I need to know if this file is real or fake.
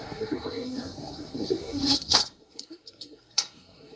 fake